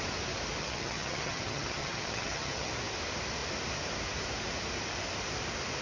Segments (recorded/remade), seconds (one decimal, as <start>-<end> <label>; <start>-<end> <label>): 0.0-0.6 recorded; 0.6-2.7 remade; 2.7-5.8 recorded